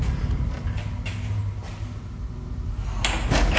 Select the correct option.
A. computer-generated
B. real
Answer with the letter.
B